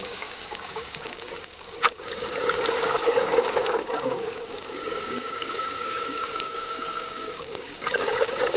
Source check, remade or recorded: remade